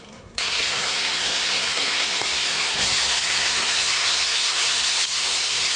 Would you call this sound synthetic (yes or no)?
yes